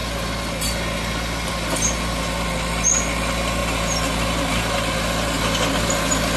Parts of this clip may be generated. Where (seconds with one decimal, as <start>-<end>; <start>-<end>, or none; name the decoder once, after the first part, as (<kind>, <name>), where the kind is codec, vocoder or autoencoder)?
none